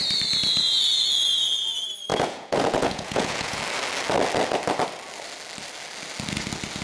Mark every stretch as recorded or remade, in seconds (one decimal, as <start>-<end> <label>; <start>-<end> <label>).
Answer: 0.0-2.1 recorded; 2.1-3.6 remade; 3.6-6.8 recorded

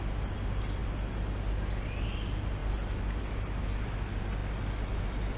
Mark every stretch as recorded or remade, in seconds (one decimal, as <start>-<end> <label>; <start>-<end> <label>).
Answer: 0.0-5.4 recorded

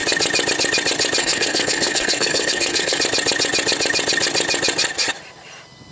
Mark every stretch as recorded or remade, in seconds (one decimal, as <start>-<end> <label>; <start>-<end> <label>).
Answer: 0.0-1.2 recorded; 1.2-3.0 remade; 3.0-5.9 recorded

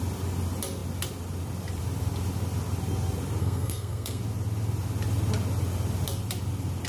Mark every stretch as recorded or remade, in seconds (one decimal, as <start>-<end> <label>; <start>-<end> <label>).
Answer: 0.0-3.4 recorded; 3.4-4.2 remade; 4.2-6.9 recorded

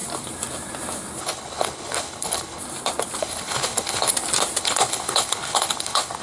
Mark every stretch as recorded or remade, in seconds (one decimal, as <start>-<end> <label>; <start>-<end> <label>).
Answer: 0.0-1.2 recorded; 1.2-2.6 remade; 2.6-3.2 recorded; 3.2-4.1 remade; 4.1-4.6 recorded; 4.6-6.2 remade

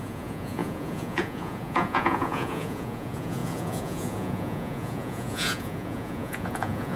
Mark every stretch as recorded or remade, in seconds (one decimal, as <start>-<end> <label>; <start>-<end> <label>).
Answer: 0.0-7.0 remade

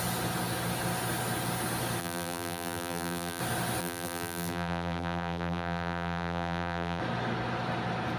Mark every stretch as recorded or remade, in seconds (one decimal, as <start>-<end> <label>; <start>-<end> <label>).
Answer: 0.0-2.0 recorded; 2.0-3.4 remade; 3.4-3.8 recorded; 3.8-7.0 remade; 7.0-8.2 recorded